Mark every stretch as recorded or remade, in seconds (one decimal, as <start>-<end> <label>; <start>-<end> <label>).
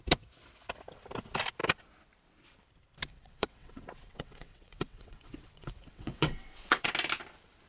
0.0-3.1 recorded; 3.1-6.9 remade; 6.9-7.7 recorded